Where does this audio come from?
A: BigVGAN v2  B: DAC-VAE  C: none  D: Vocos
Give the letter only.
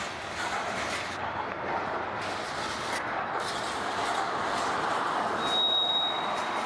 C